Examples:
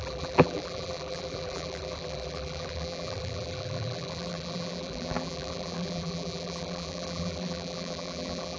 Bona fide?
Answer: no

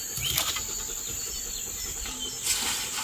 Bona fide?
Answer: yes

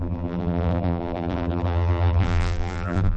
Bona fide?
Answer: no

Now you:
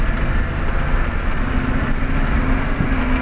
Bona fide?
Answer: yes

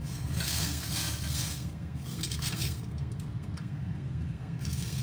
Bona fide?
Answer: no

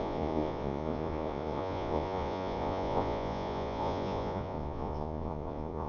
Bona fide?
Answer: no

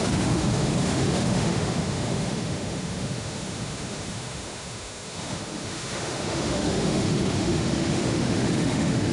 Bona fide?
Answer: no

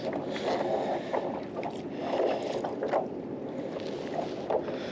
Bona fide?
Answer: yes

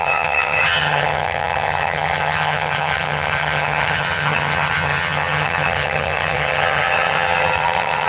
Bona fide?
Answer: no